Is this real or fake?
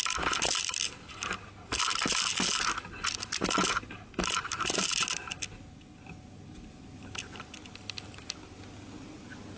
real